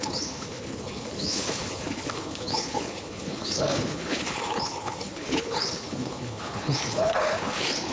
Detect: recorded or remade remade